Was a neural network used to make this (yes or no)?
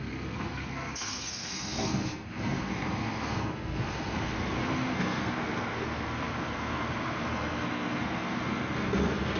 yes